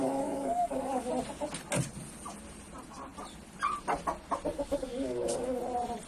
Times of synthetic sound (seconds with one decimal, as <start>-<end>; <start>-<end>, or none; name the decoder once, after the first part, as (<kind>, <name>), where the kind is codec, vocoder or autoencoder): 0.0-1.1 (codec, DAC); 4.5-5.6